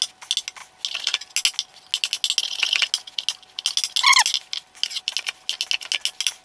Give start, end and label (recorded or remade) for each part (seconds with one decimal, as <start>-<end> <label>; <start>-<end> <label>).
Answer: 0.0-6.4 recorded